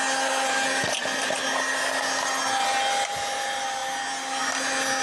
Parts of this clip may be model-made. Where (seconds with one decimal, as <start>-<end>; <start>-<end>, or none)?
none

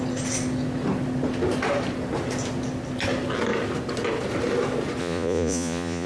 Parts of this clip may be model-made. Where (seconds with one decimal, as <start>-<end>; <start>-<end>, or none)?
5.0-6.1

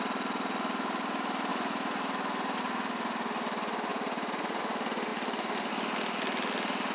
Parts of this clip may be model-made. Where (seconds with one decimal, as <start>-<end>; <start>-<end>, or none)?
1.5-2.0; 3.9-4.6